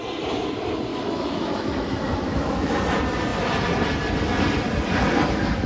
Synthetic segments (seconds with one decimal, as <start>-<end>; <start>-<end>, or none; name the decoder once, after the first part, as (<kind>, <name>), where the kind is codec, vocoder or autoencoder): 0.9-2.8 (autoencoder, DAC-VAE)